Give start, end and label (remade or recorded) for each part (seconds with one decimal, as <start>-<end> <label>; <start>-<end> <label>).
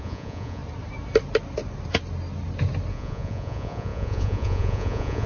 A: 0.0-0.6 remade; 0.6-2.9 recorded; 2.9-5.3 remade